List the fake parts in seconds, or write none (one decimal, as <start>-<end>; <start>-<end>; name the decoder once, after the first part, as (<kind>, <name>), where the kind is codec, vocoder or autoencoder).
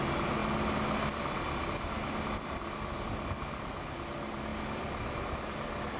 none